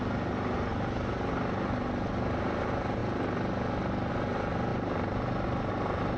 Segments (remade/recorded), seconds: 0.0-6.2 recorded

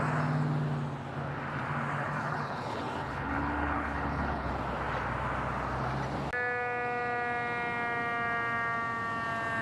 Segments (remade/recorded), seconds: 0.0-2.0 recorded; 2.0-4.5 remade; 4.5-9.6 recorded

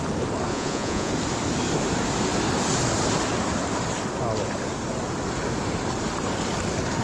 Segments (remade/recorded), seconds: 0.0-0.5 recorded; 0.5-1.1 remade; 1.1-7.0 recorded

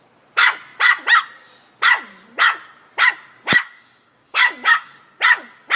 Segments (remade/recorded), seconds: 0.0-3.5 recorded; 3.5-5.0 remade; 5.0-5.8 recorded